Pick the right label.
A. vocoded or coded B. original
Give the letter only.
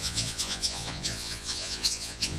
A